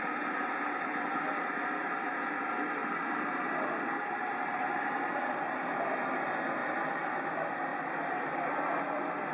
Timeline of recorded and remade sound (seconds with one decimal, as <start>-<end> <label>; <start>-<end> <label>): 0.0-6.6 recorded; 6.6-7.1 remade; 7.1-7.7 recorded; 7.7-8.5 remade; 8.5-9.3 recorded